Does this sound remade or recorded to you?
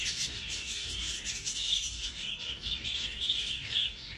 remade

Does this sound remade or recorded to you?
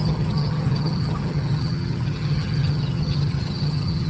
remade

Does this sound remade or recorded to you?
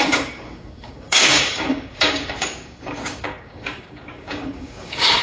remade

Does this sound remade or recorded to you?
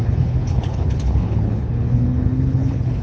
remade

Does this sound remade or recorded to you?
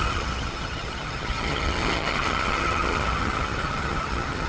remade